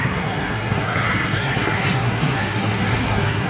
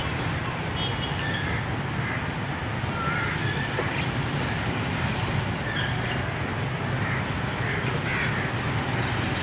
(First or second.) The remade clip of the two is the first